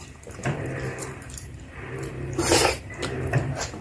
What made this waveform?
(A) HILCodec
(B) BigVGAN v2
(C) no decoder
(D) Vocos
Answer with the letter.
B